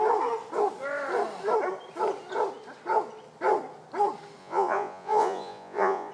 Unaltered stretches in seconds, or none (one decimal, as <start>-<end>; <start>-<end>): 0.0-4.4